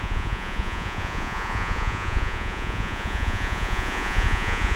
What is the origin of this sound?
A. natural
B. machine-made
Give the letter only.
B